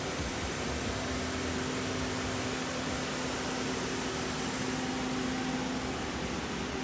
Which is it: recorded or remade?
recorded